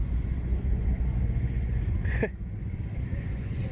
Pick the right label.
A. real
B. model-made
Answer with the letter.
B